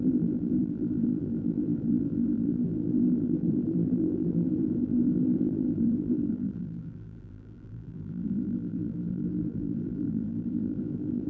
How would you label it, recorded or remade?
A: remade